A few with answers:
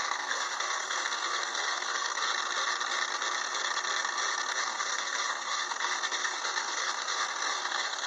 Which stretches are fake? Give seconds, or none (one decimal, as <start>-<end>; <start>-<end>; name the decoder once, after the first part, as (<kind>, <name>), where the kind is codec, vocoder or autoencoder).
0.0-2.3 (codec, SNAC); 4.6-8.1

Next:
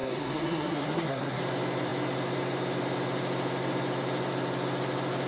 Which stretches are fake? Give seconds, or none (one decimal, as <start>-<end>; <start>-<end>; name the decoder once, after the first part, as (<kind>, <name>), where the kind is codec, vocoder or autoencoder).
0.0-1.4 (codec, SNAC)

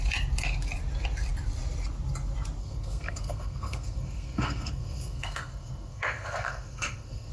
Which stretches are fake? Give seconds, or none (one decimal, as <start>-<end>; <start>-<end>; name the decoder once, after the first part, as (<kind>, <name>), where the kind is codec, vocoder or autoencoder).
2.6-7.3 (codec, SNAC)

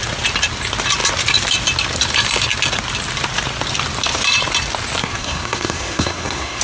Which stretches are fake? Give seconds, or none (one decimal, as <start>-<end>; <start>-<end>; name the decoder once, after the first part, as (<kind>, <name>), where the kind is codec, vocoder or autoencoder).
5.0-6.6 (codec, SNAC)